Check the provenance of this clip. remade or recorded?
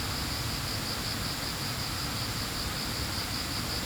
recorded